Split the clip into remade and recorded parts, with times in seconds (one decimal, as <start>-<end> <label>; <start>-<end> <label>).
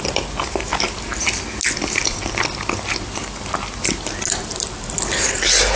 0.0-5.8 recorded